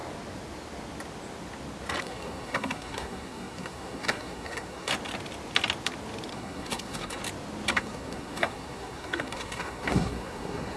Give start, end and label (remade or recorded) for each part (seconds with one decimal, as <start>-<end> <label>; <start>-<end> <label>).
0.0-2.0 recorded; 2.0-4.9 remade; 4.9-6.3 recorded; 6.3-7.2 remade; 7.2-7.7 recorded; 7.7-10.8 remade